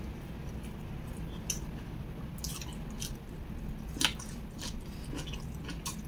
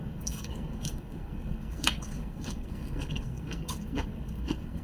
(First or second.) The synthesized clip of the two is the second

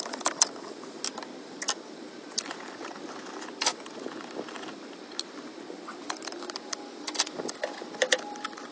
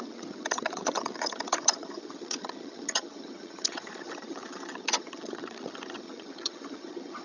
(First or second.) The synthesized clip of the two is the second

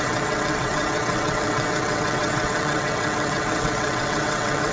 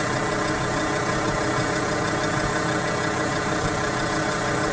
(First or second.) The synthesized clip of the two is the first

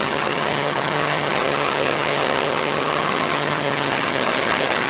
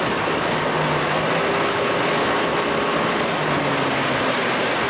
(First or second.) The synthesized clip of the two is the first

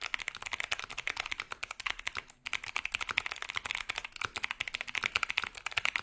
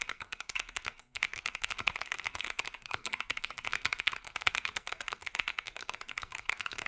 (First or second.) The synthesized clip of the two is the second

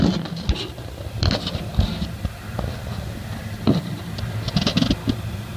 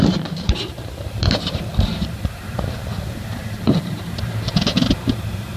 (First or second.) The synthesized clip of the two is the second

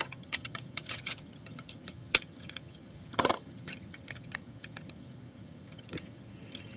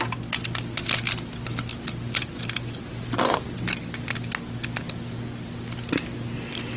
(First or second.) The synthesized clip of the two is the first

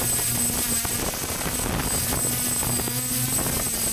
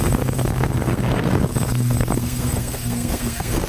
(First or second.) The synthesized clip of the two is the second